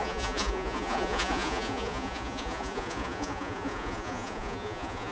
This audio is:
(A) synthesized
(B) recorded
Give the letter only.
A